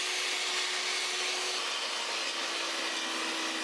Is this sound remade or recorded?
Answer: recorded